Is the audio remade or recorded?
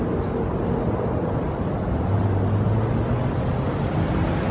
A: recorded